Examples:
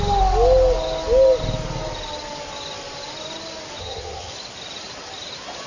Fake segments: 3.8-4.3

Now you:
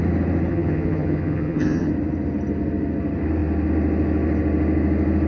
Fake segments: 0.5-1.9

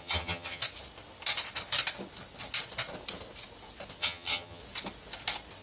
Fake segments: 0.0-0.6; 4.0-4.6